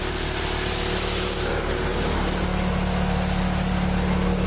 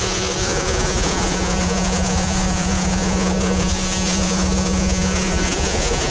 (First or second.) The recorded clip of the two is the first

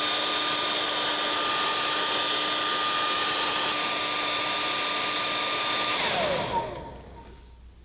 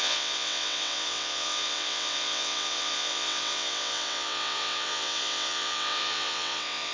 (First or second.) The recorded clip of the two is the first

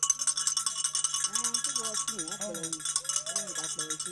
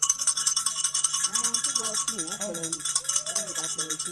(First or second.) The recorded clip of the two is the first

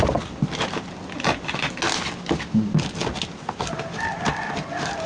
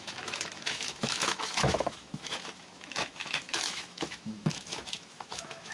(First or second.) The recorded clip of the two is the first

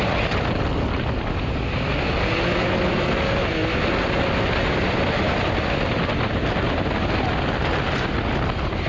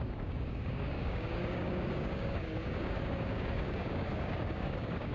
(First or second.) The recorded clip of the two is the first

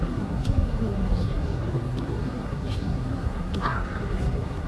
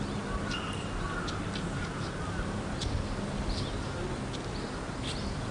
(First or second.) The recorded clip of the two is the second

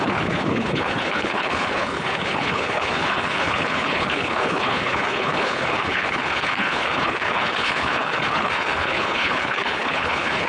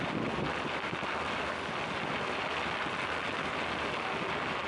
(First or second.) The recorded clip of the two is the second